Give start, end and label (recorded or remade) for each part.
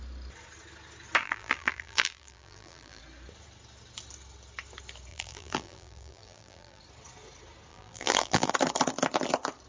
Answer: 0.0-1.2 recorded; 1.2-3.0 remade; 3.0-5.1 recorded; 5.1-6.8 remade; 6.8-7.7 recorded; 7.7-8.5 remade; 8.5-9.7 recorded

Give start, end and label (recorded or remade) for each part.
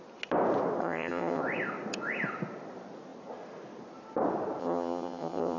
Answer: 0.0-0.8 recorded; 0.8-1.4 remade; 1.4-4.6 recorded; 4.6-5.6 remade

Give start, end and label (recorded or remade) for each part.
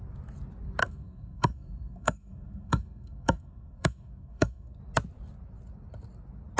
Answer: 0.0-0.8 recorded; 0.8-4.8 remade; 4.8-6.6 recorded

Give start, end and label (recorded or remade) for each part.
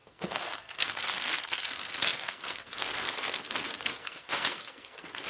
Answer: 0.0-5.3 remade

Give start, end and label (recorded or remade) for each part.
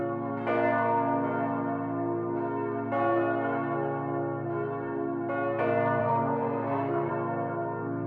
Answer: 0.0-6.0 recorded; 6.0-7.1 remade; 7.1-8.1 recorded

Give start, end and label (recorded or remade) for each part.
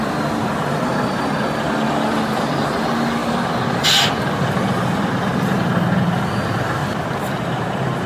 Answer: 0.0-6.8 recorded; 6.8-8.1 remade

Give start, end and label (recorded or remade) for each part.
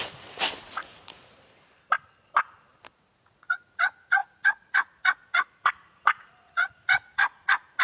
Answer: 0.0-1.3 remade; 1.3-2.9 recorded; 2.9-7.8 remade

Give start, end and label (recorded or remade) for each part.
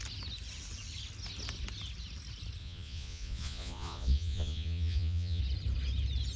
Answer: 0.0-2.6 recorded; 2.6-5.4 remade; 5.4-6.4 recorded